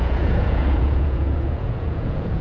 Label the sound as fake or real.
fake